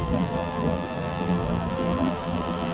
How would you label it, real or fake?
fake